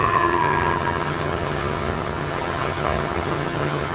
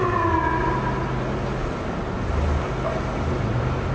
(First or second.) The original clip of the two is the second